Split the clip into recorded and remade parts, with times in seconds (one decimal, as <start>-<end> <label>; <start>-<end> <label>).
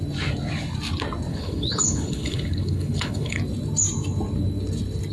0.0-1.3 recorded; 1.3-3.4 remade; 3.4-5.1 recorded